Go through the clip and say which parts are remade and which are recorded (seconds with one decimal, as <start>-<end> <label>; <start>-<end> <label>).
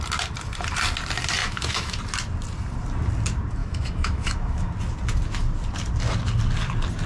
0.0-1.4 recorded; 1.4-2.0 remade; 2.0-3.6 recorded; 3.6-4.7 remade; 4.7-7.1 recorded